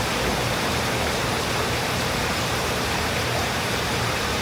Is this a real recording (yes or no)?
no